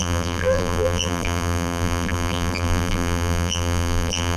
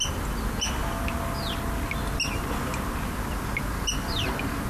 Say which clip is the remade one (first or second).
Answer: first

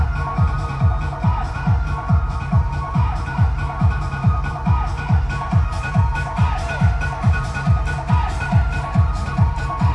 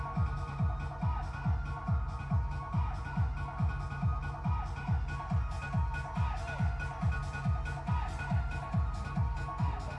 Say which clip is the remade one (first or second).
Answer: first